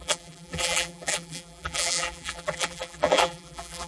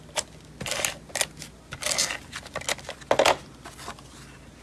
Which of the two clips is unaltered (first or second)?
second